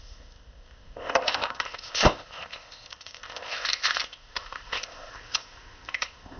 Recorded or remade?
remade